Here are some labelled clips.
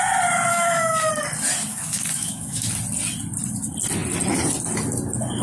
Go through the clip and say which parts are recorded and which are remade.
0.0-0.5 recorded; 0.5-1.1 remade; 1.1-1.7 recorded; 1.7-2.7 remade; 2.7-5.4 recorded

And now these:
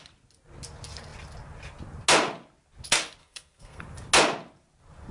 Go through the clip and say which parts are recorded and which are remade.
0.0-3.2 recorded; 3.2-3.8 remade; 3.8-5.1 recorded

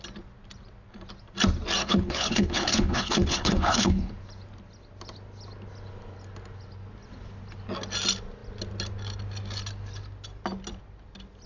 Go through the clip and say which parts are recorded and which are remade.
0.0-1.8 recorded; 1.8-4.1 remade; 4.1-11.5 recorded

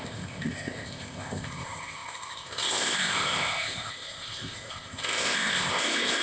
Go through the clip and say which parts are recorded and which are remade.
0.0-6.2 remade

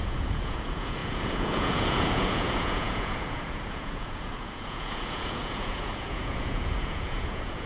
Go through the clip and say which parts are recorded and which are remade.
0.0-7.7 remade

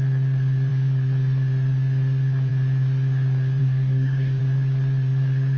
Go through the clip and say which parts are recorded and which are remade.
0.0-3.6 recorded; 3.6-4.4 remade; 4.4-5.6 recorded

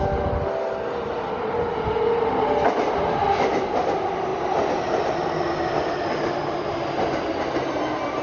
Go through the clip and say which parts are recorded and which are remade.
0.0-8.2 recorded

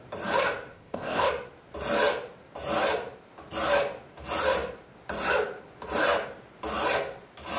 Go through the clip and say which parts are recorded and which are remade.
0.0-0.7 recorded; 0.7-1.3 remade; 1.3-7.6 recorded